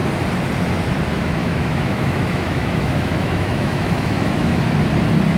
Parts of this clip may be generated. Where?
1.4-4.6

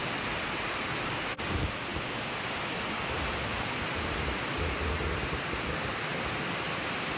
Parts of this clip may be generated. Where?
none

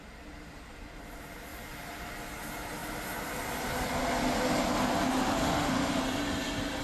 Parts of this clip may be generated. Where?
5.4-6.0

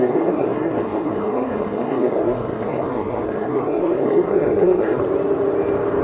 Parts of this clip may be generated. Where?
0.0-5.0